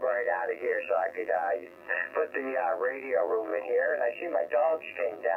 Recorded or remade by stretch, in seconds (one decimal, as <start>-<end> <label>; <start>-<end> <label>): 0.0-5.4 remade